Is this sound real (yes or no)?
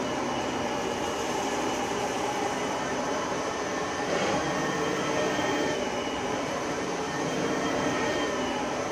no